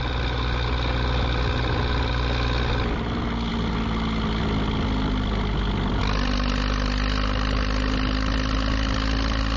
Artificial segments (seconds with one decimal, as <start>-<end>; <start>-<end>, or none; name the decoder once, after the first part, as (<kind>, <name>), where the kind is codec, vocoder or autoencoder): none